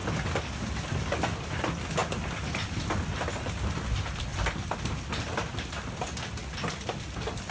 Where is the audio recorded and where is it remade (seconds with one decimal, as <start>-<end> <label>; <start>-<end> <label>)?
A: 0.0-7.5 recorded